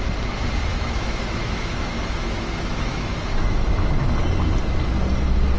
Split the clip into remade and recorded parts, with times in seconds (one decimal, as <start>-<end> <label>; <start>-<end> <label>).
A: 0.0-0.7 recorded; 0.7-4.1 remade; 4.1-5.6 recorded